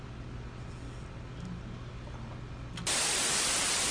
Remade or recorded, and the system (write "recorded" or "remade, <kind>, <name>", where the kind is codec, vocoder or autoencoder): recorded